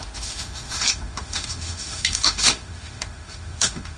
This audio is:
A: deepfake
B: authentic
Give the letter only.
A